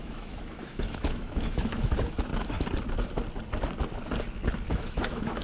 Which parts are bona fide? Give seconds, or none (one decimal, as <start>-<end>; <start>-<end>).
2.3-4.7